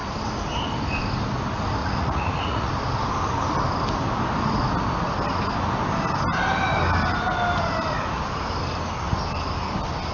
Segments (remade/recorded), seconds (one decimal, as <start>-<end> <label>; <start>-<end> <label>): 0.0-1.8 recorded; 1.8-2.7 remade; 2.7-10.1 recorded